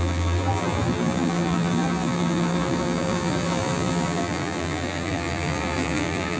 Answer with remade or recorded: remade